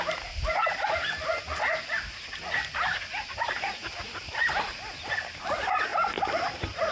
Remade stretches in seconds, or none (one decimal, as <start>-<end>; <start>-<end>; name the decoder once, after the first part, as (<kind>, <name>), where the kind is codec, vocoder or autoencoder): none